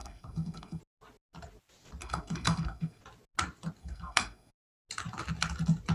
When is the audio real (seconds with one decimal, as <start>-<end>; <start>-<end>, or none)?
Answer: 0.8-2.0; 3.0-3.8; 4.5-5.9